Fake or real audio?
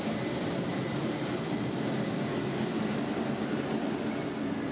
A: real